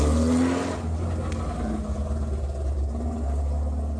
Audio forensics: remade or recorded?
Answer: recorded